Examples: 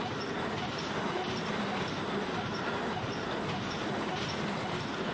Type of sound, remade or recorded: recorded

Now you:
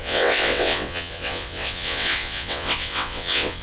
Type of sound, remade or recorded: remade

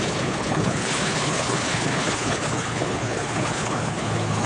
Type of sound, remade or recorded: remade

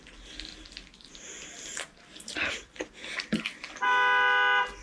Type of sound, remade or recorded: recorded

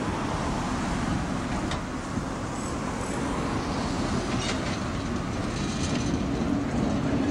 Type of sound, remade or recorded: recorded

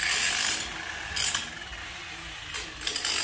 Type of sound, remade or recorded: recorded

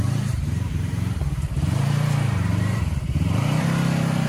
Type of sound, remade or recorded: remade